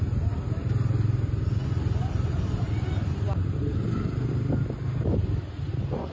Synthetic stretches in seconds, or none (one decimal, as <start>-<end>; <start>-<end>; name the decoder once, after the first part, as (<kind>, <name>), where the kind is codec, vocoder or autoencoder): none